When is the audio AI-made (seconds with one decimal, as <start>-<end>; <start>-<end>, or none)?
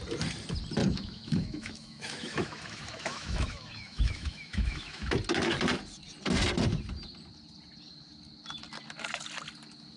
0.8-5.1